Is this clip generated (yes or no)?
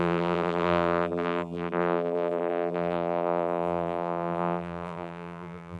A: yes